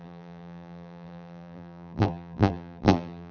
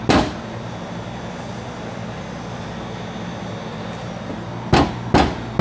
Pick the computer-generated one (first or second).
first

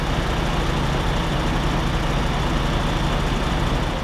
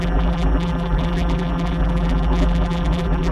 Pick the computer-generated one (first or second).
second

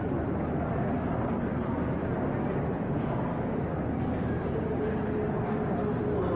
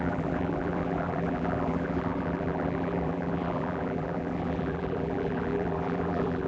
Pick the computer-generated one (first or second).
second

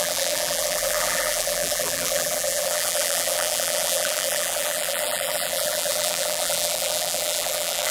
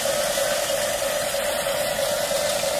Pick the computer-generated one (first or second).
first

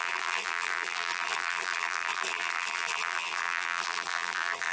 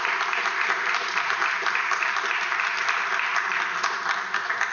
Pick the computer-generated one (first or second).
first